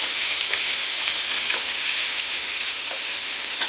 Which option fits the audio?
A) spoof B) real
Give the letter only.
A